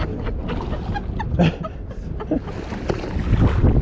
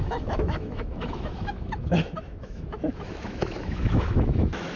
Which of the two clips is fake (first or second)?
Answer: second